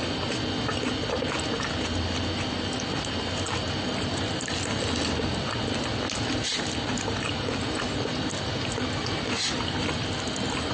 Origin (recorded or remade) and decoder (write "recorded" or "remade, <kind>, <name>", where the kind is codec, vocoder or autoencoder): recorded